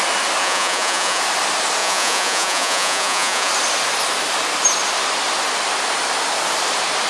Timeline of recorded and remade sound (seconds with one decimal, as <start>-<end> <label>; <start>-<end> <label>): 0.0-0.4 recorded; 0.4-1.2 remade; 1.2-1.8 recorded; 1.8-3.5 remade; 3.5-7.1 recorded